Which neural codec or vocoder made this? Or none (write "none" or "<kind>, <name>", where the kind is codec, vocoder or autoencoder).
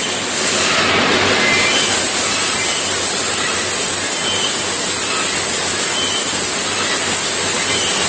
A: none